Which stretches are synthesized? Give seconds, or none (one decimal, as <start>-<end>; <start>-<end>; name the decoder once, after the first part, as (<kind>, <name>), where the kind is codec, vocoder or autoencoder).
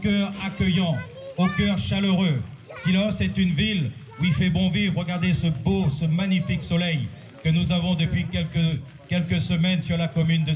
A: none